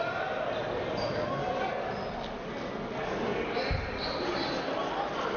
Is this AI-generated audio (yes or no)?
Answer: no